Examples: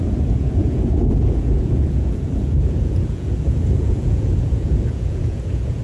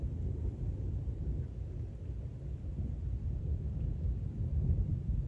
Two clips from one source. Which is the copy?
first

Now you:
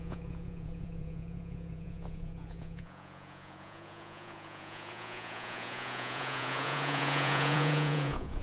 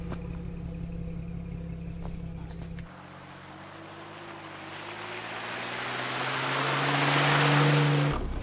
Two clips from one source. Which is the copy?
first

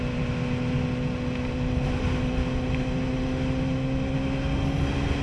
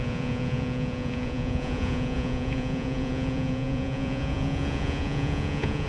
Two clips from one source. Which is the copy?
second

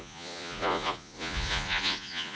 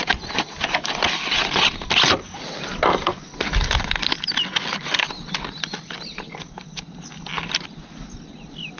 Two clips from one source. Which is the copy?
first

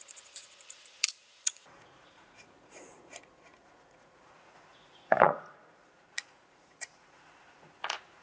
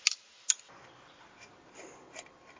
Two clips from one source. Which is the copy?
first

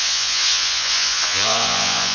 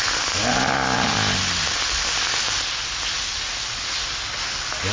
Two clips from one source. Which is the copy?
first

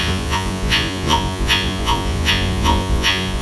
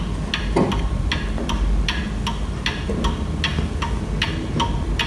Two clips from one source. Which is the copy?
first